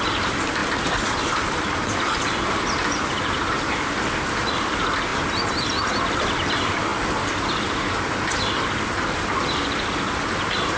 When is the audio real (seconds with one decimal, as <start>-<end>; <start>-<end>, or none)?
0.6-1.2